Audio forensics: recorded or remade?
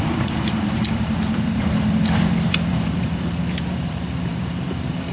remade